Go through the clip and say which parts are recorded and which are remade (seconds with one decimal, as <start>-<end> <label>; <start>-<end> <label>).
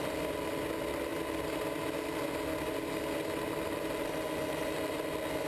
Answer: 0.0-5.5 recorded